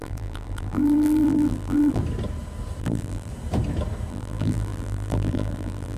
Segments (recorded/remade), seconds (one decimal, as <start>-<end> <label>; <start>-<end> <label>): 0.0-2.0 remade; 2.0-2.8 recorded; 2.8-3.3 remade; 3.3-4.1 recorded; 4.1-6.0 remade